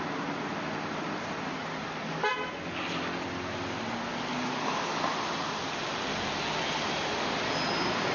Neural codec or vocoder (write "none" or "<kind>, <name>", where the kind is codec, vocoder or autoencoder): none